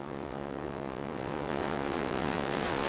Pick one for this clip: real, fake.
fake